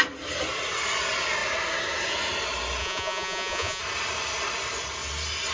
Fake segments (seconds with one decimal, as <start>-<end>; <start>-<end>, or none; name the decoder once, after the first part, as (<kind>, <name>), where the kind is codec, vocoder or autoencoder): 2.8-3.8 (vocoder, Vocos)